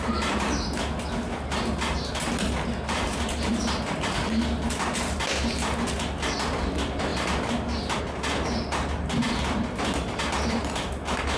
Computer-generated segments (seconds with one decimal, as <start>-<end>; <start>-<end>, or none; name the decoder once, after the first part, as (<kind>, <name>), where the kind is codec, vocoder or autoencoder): none